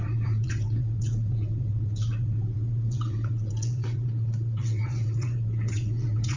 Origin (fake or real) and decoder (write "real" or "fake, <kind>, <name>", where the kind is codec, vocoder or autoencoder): fake, vocoder, WaveNeXt